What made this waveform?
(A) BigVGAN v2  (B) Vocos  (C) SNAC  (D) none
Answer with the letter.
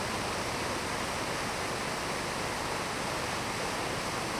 D